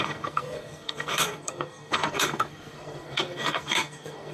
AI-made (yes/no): yes